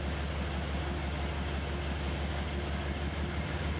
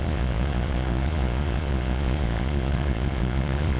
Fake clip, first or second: second